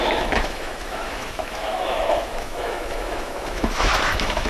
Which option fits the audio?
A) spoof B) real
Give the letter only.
A